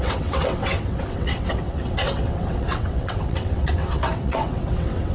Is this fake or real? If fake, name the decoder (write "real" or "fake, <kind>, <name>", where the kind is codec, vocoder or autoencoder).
fake, vocoder, WaveNeXt